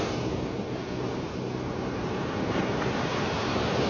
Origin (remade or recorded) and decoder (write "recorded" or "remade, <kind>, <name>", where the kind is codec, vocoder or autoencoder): recorded